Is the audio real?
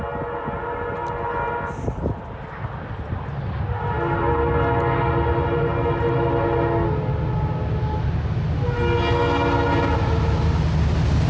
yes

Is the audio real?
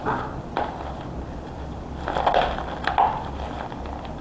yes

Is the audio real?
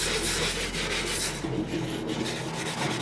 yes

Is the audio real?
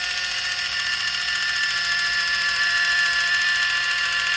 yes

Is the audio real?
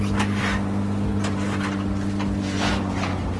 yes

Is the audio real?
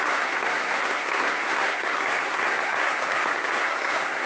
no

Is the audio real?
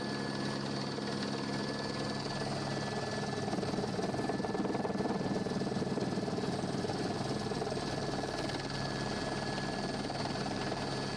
yes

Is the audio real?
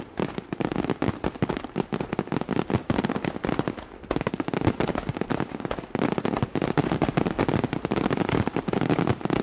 yes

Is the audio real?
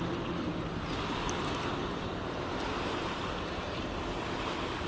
yes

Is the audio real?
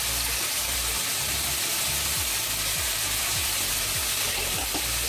no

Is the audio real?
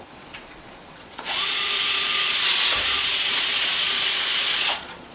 no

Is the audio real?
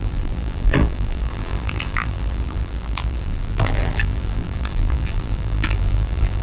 no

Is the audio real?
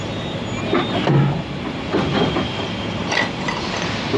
yes